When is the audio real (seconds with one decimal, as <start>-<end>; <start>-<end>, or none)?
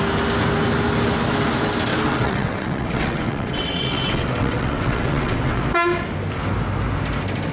0.0-1.9; 5.6-7.5